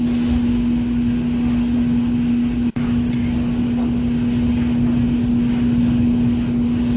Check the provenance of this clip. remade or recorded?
recorded